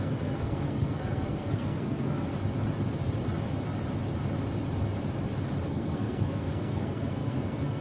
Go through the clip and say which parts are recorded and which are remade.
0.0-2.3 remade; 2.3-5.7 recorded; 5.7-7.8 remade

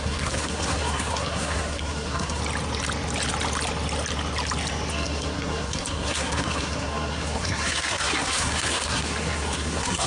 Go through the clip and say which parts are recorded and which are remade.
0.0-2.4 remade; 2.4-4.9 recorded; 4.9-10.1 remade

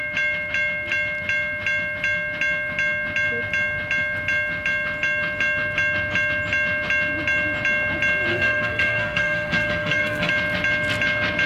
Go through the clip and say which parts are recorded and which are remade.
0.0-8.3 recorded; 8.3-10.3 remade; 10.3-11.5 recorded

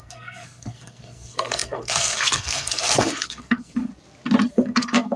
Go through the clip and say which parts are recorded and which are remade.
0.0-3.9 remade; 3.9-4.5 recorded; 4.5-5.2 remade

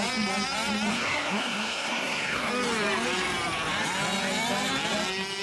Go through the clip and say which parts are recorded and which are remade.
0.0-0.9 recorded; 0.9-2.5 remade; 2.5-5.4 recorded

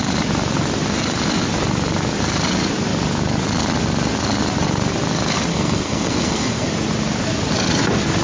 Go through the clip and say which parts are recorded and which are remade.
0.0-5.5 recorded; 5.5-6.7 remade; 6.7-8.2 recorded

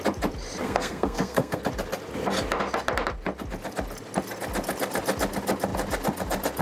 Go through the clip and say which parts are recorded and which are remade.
0.0-0.6 recorded; 0.6-1.6 remade; 1.6-6.6 recorded